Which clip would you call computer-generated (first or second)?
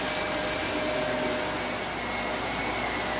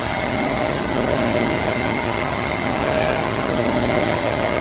second